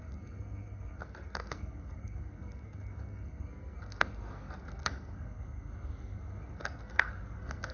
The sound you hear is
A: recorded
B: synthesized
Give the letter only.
B